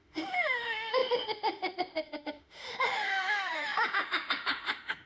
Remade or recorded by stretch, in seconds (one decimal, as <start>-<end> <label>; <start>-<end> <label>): 0.0-5.1 remade